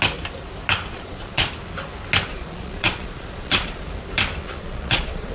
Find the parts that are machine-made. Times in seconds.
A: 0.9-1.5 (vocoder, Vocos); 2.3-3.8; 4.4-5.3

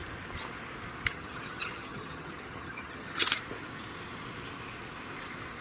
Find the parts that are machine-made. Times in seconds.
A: 1.1-3.3 (vocoder, HiFi-GAN)

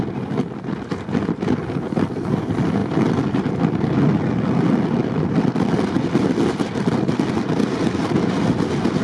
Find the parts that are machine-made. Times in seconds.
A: 2.8-3.8 (vocoder, BigVGAN v2)

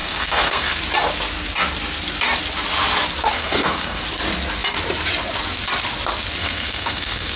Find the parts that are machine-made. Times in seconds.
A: 0.0-0.8 (codec, SNAC); 3.2-4.0; 6.4-7.4

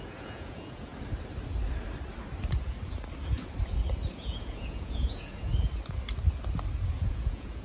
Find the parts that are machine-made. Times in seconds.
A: 0.0-0.9 (vocoder, Vocos); 4.1-5.5; 6.9-7.6

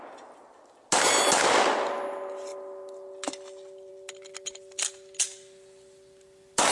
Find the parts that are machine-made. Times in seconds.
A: none

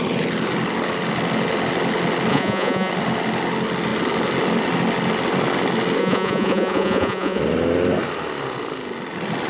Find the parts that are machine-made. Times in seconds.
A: 2.3-2.9 (vocoder, Vocos); 6.0-7.4

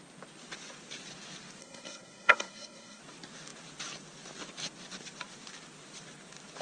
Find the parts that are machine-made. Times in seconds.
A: 1.6-3.0 (codec, SNAC)